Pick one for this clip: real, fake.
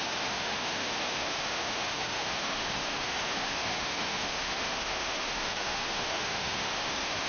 fake